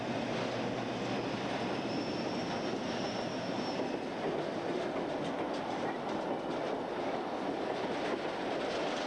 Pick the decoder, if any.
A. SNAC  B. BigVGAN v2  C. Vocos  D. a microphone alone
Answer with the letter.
D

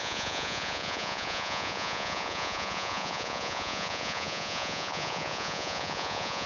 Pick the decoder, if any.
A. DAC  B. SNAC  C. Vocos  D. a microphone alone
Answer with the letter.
C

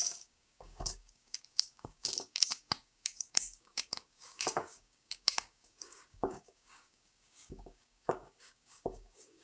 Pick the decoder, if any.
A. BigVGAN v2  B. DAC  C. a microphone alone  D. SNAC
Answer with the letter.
B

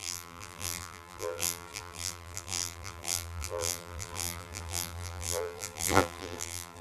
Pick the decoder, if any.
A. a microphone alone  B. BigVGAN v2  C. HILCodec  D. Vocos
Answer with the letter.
B